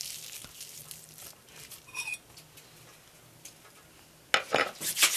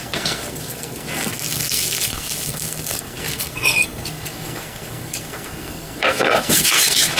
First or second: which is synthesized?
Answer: second